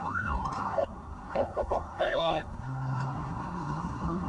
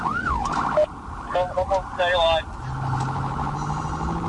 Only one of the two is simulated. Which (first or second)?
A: first